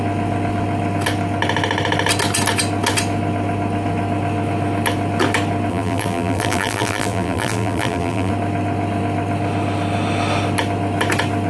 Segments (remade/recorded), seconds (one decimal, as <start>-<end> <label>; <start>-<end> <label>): 0.0-5.7 recorded; 5.7-8.3 remade; 8.3-11.5 recorded